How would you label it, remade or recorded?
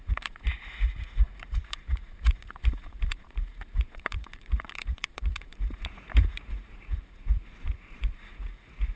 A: remade